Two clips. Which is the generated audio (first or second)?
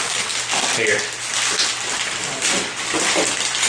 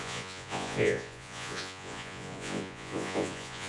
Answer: second